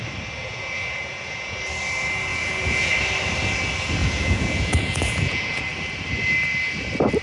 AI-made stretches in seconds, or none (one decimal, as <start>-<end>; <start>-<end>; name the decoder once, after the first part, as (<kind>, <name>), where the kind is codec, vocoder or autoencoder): 0.4-1.6 (vocoder, Vocos); 2.3-2.9; 4.0-5.6